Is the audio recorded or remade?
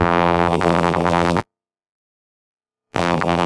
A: remade